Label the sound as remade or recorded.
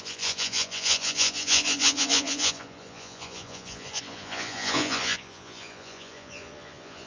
remade